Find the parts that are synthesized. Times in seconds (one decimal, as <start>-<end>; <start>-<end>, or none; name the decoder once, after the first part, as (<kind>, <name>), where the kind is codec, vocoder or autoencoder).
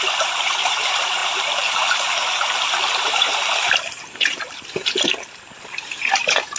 0.0-6.6 (vocoder, BigVGAN v2)